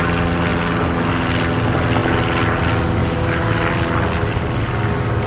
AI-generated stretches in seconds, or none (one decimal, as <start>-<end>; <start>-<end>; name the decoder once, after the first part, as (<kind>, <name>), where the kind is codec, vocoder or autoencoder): none

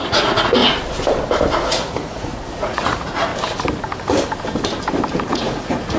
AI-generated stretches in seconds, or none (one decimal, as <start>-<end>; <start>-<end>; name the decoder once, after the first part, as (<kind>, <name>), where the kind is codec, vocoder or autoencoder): 0.0-0.6 (vocoder, Vocos); 1.6-3.3; 5.3-6.0

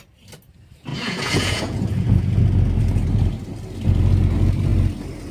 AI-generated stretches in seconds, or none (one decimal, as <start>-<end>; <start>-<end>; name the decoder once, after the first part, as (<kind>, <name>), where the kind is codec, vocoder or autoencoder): 0.9-2.4 (vocoder, Vocos)